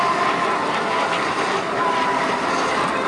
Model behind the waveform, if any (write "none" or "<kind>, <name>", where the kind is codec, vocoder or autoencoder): none